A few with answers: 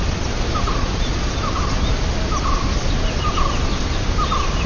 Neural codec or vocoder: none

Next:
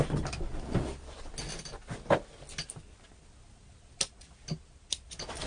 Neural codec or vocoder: none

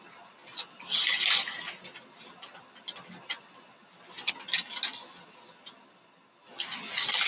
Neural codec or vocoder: none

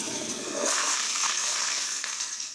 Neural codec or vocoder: codec, SNAC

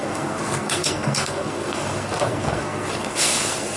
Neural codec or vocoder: codec, SNAC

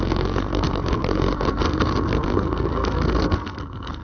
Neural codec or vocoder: codec, SNAC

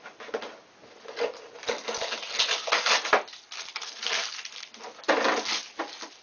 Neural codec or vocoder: none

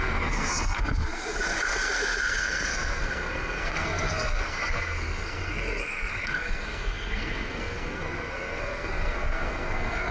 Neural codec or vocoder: codec, SNAC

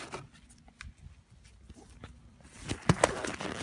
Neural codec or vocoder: none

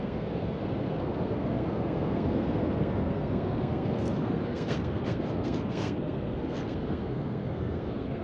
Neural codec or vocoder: codec, SNAC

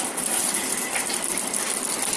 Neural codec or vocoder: none